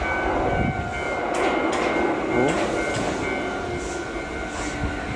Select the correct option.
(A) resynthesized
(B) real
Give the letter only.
B